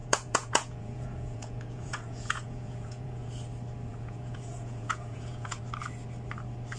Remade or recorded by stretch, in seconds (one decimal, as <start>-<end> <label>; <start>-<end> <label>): 0.0-3.3 remade; 3.3-3.9 recorded; 3.9-5.6 remade; 5.6-6.8 recorded